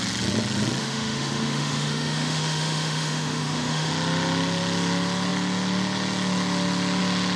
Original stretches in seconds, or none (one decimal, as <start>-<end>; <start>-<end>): 0.0-0.8; 3.9-7.4